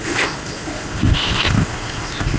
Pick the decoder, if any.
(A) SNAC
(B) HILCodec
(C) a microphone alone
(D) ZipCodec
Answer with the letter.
D